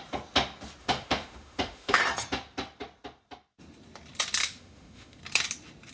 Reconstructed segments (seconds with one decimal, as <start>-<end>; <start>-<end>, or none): 0.8-2.0; 4.4-5.2